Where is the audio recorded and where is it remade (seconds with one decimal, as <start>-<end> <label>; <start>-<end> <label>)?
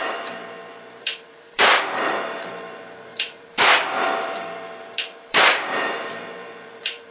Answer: 0.0-7.1 remade